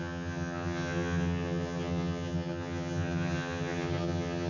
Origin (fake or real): fake